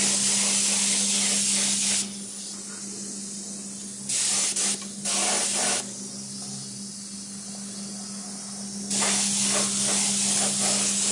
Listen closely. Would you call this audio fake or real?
real